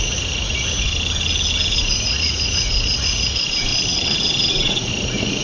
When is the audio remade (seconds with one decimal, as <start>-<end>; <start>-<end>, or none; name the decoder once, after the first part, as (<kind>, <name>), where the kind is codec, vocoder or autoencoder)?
0.0-0.9 (vocoder, Vocos); 1.7-3.7; 4.5-5.4